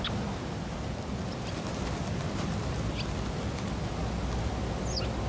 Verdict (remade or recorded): recorded